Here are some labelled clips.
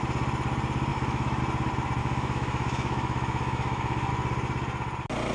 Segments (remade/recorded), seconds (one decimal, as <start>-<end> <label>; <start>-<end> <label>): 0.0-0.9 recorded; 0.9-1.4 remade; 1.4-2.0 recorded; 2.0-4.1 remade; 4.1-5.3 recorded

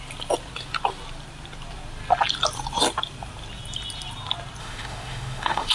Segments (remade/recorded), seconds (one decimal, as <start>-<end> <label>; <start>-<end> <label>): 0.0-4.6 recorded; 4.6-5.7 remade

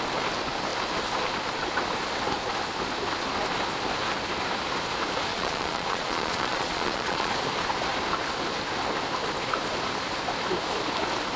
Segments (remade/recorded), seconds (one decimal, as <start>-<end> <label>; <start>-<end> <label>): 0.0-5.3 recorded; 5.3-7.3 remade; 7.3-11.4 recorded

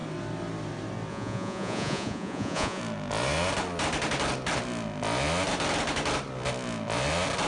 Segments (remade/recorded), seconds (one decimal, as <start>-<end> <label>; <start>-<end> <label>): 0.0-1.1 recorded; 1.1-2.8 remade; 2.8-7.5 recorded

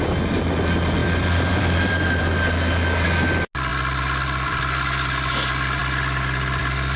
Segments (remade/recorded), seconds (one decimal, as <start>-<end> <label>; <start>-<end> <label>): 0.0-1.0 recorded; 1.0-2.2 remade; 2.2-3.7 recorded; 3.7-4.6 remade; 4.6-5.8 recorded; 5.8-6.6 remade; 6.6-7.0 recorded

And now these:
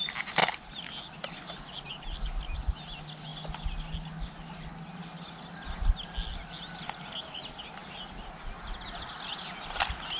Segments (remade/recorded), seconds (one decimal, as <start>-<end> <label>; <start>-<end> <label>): 0.0-10.2 recorded